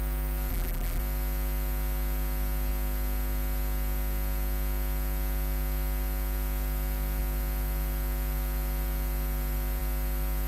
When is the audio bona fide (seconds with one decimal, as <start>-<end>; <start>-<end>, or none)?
0.0-0.5; 1.0-10.5